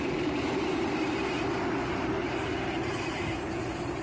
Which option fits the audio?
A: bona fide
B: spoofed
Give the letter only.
B